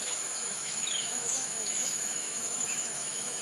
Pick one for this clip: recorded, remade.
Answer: remade